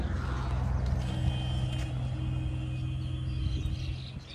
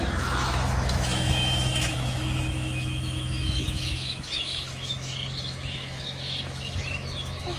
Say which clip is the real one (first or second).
first